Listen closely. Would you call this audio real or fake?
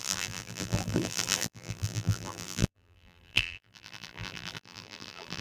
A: fake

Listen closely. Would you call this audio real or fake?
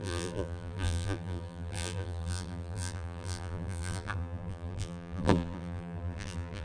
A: fake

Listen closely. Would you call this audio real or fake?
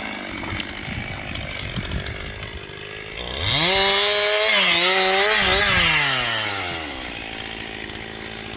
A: real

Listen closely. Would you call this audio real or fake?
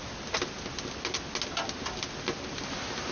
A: real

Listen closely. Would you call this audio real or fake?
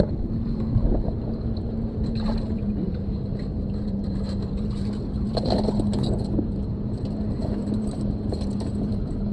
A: fake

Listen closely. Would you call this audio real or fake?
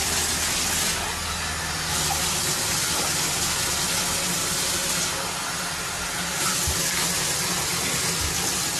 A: real